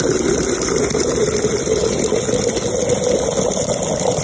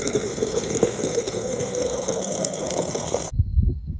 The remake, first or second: second